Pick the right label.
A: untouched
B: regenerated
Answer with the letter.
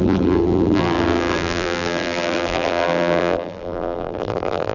B